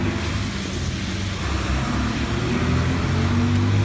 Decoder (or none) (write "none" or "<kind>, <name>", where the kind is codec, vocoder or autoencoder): none